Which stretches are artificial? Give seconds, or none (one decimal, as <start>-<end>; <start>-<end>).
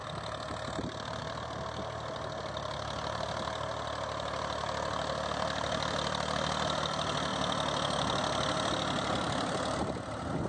none